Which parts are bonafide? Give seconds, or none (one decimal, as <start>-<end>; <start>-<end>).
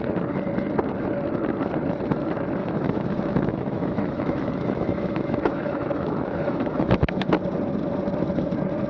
0.0-2.6; 7.3-8.9